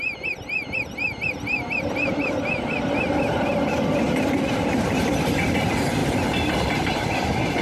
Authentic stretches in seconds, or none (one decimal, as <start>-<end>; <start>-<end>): 0.0-7.6